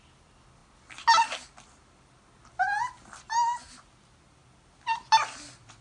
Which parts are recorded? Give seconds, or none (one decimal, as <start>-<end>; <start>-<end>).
0.0-5.8